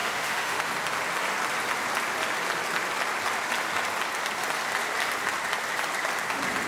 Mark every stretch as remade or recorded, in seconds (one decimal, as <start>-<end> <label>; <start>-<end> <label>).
0.0-0.7 remade; 0.7-6.7 recorded